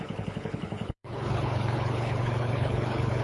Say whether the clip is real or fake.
fake